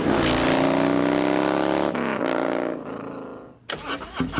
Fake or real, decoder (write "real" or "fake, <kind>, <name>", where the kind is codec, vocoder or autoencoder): real